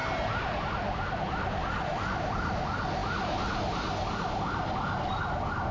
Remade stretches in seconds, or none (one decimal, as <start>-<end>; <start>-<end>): none